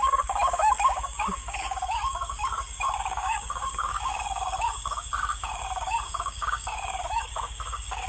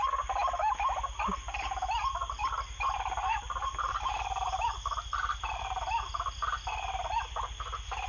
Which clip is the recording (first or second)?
second